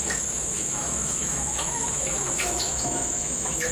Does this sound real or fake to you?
fake